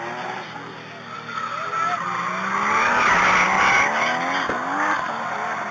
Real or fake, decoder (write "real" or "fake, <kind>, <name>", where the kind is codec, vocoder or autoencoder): real